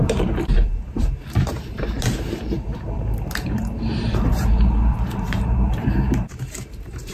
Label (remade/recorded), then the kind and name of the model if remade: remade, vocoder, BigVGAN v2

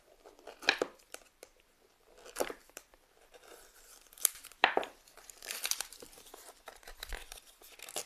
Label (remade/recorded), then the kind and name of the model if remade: remade, vocoder, BigVGAN v2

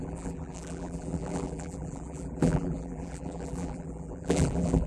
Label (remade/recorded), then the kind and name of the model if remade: remade, vocoder, BigVGAN v2